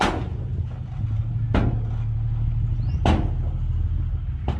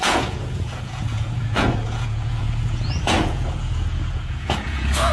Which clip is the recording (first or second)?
first